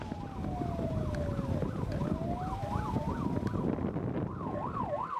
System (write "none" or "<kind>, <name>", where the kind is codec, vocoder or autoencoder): none